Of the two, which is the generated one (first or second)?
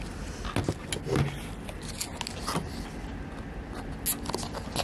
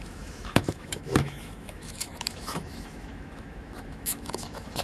second